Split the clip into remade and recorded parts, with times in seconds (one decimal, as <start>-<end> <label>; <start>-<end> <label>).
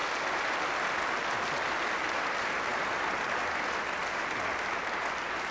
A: 0.0-5.5 recorded